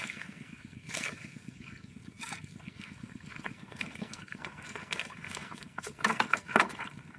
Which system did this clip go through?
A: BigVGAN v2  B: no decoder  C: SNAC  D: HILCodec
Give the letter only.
C